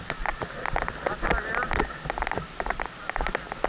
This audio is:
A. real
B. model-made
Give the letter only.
A